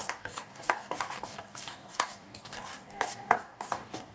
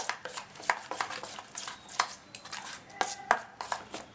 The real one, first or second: second